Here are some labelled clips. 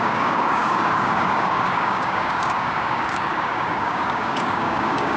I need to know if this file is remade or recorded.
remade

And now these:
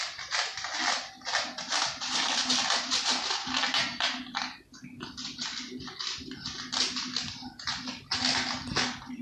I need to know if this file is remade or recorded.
recorded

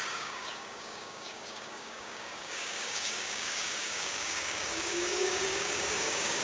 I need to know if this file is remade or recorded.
remade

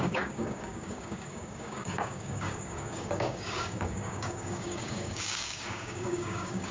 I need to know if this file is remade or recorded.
remade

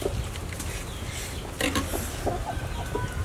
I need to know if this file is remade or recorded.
recorded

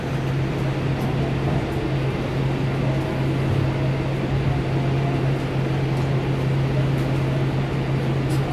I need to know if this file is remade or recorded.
recorded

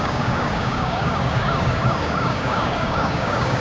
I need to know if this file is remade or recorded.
remade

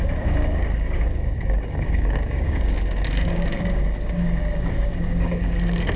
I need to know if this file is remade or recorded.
remade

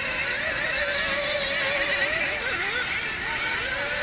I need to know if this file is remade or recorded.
recorded